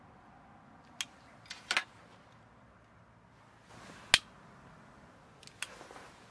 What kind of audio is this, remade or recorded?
recorded